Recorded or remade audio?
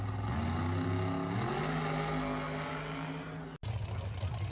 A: recorded